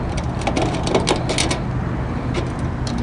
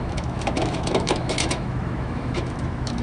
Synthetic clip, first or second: second